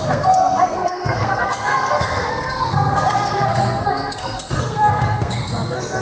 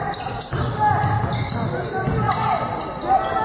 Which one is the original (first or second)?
second